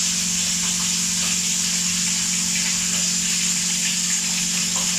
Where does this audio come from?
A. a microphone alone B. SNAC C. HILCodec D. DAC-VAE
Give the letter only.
A